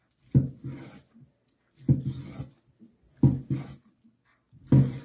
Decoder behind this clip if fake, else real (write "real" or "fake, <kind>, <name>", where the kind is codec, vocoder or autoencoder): real